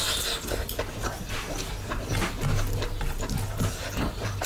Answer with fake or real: real